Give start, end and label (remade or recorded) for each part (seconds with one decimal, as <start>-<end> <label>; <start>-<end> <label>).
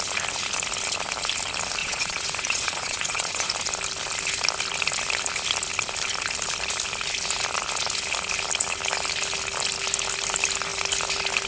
0.0-1.8 recorded; 1.8-3.5 remade; 3.5-11.5 recorded